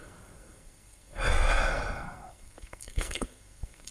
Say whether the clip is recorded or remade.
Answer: remade